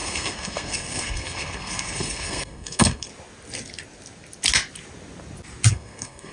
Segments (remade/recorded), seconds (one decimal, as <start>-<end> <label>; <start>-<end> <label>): 0.0-3.1 remade; 3.1-5.7 recorded; 5.7-6.3 remade

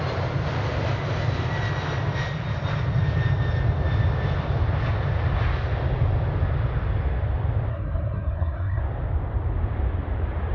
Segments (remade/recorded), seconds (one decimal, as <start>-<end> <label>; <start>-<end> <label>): 0.0-7.7 recorded; 7.7-8.8 remade; 8.8-10.5 recorded

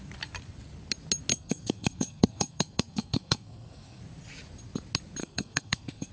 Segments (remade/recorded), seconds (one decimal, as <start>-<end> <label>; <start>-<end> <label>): 0.0-1.3 recorded; 1.3-4.0 remade; 4.0-5.2 recorded; 5.2-6.1 remade

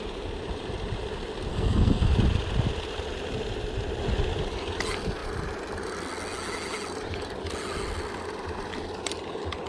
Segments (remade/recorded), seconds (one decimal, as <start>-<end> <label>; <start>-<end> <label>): 0.0-1.5 recorded; 1.5-2.1 remade; 2.1-9.7 recorded

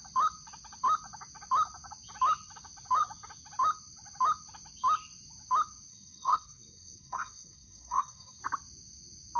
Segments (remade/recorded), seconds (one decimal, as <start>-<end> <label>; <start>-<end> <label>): 0.0-5.9 recorded; 5.9-8.4 remade; 8.4-9.4 recorded

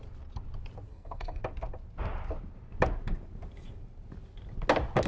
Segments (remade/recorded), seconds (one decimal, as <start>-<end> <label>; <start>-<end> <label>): 0.0-0.9 recorded; 0.9-1.4 remade; 1.4-5.1 recorded

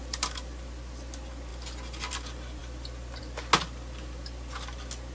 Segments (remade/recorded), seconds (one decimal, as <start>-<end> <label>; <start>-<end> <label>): 0.0-5.1 recorded

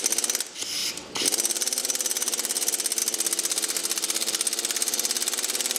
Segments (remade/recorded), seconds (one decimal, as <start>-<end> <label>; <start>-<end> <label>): 0.0-5.8 recorded